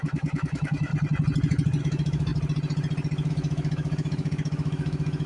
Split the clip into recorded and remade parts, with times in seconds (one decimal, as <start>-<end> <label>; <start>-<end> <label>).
0.0-0.9 remade; 0.9-1.8 recorded; 1.8-2.3 remade; 2.3-3.3 recorded; 3.3-5.3 remade